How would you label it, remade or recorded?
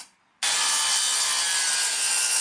recorded